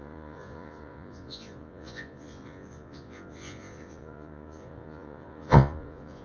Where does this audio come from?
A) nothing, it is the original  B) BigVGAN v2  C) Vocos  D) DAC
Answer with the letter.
C